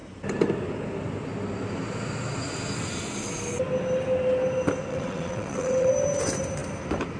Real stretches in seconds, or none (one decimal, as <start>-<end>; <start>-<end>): 0.0-4.9; 5.9-7.2